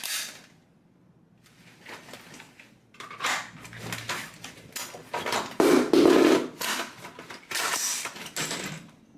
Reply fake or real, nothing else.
real